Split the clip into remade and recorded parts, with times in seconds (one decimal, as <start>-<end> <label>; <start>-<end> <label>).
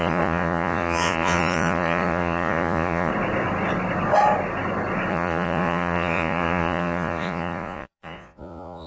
0.0-3.1 remade; 3.1-5.1 recorded; 5.1-8.9 remade